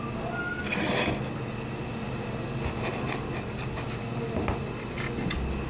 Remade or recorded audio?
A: recorded